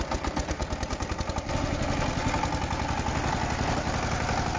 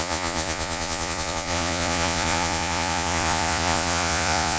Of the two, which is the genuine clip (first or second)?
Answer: first